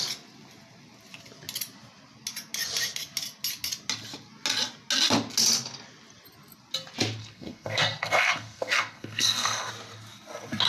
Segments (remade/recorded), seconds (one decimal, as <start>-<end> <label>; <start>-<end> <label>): 0.0-7.2 recorded; 7.2-9.7 remade; 9.7-10.7 recorded